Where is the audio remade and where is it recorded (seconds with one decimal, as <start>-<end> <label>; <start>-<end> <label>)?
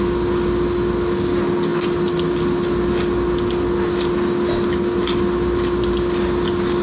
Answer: 0.0-6.8 recorded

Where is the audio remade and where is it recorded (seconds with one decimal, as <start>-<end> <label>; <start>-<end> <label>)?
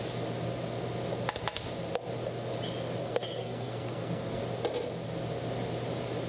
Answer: 0.0-3.0 recorded; 3.0-4.4 remade; 4.4-6.3 recorded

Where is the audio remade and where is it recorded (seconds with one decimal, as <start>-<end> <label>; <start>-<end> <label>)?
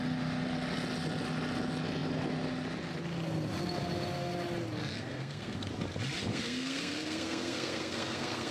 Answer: 0.0-4.8 recorded; 4.8-5.7 remade; 5.7-6.3 recorded; 6.3-8.5 remade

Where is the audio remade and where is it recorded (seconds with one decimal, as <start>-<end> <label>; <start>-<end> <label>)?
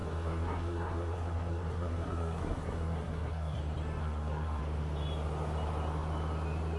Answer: 0.0-3.6 remade; 3.6-4.0 recorded; 4.0-4.6 remade; 4.6-6.8 recorded